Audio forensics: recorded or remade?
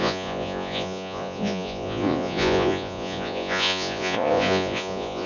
remade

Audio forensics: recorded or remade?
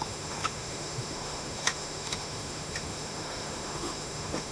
remade